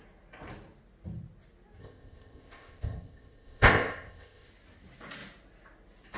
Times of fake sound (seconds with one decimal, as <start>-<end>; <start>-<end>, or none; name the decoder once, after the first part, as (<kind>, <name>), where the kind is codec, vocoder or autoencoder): 1.8-4.5 (codec, ZipCodec)